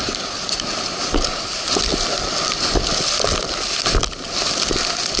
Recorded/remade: recorded